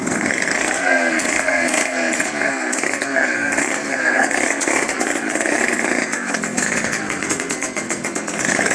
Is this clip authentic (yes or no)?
no